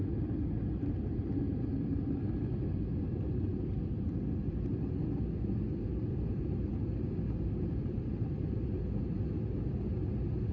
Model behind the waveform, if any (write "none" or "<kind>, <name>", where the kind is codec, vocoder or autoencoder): none